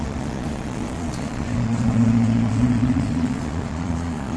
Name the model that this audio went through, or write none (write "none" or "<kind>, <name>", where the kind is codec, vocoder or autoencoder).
vocoder, Vocos